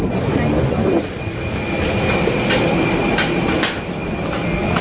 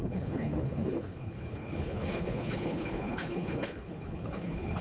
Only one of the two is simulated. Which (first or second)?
second